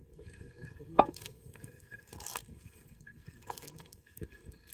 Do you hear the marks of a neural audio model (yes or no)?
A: yes